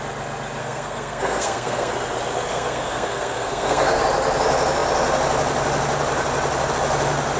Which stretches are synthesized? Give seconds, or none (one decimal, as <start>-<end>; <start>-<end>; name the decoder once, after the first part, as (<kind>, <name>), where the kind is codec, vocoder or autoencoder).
0.6-1.9 (codec, SNAC); 2.5-4.0